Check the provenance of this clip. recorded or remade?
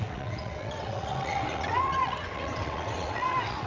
remade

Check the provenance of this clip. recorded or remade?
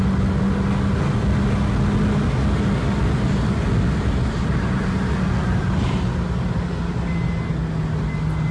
recorded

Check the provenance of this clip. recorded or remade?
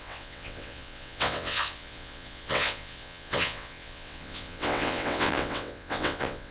remade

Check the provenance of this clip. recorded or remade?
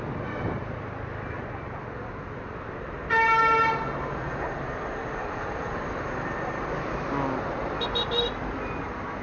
recorded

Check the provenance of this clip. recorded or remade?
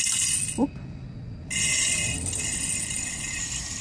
recorded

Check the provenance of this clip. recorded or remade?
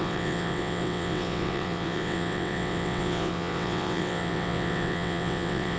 remade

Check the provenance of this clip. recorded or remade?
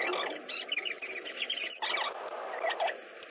recorded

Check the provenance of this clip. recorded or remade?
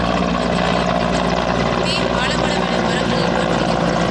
recorded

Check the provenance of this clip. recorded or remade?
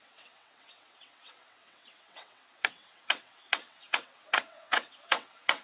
remade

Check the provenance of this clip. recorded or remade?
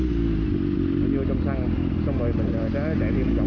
recorded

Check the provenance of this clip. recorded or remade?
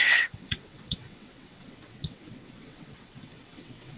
remade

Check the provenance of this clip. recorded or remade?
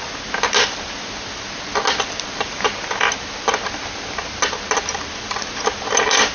recorded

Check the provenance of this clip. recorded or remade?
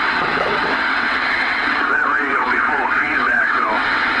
remade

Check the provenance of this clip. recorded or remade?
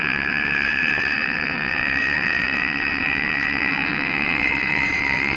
remade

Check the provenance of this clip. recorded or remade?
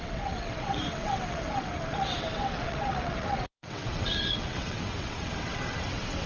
remade